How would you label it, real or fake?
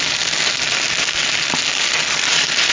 real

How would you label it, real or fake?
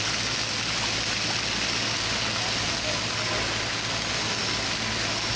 real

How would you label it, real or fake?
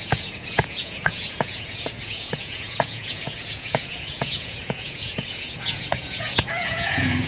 fake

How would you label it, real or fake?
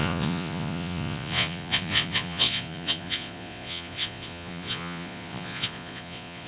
fake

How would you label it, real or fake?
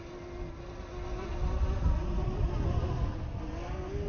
real